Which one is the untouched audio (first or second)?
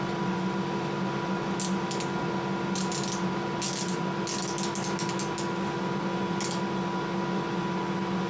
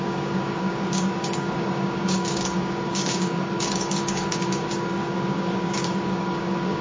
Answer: first